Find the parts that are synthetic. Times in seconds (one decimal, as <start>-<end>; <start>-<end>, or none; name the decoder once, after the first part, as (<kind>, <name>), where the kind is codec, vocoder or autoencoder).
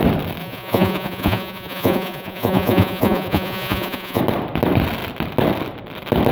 0.4-4.2 (vocoder, Vocos)